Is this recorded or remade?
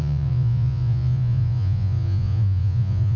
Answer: remade